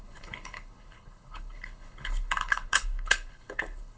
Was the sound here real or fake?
fake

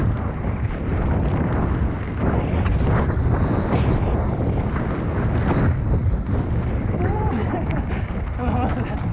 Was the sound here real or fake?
real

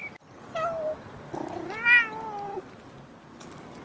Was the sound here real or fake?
real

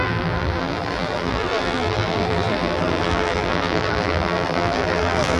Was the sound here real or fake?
fake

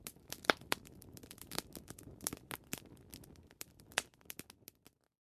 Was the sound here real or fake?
real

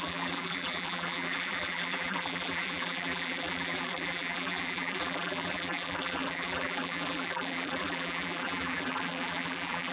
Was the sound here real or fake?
fake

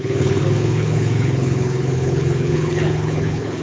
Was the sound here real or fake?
fake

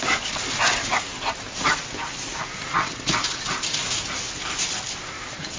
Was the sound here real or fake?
real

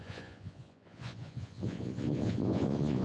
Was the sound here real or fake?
fake